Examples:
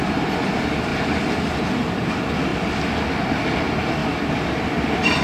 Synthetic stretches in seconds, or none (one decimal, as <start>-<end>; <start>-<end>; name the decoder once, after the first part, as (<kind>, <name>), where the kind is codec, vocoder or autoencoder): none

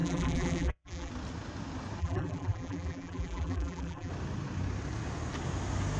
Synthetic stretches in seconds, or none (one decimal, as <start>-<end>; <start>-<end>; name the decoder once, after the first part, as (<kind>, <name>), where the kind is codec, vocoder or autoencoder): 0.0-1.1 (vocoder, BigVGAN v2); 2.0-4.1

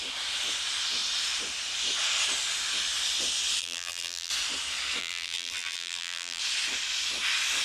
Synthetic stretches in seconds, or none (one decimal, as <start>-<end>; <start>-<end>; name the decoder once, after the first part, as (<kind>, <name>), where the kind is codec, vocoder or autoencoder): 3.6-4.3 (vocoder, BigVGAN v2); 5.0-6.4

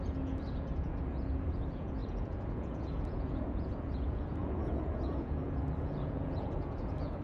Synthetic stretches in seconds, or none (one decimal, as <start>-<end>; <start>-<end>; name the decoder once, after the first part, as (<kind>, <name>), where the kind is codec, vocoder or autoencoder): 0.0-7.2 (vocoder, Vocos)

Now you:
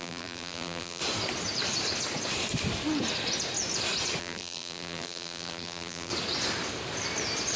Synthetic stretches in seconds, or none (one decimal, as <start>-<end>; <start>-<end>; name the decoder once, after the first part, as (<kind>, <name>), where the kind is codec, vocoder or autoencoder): 0.0-1.0 (vocoder, BigVGAN v2); 4.2-6.1

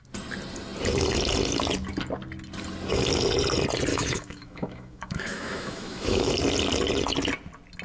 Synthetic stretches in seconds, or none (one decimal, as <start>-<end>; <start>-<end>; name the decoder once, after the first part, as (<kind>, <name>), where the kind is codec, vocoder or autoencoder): 3.9-6.3 (autoencoder, DAC-VAE)

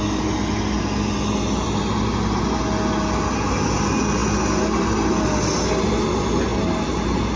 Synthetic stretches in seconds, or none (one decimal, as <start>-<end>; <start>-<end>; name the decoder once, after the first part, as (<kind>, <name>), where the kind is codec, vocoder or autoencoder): none